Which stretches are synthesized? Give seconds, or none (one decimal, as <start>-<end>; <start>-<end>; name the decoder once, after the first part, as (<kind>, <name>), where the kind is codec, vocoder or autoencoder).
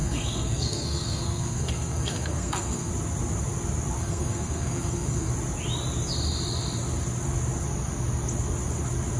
0.0-2.9 (codec, SNAC); 4.0-5.3